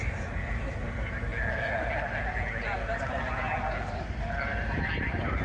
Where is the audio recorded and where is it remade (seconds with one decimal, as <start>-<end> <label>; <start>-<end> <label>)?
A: 0.0-1.3 remade; 1.3-4.5 recorded; 4.5-5.4 remade